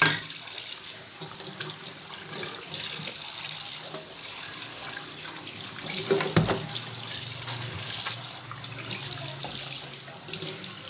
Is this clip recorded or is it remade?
recorded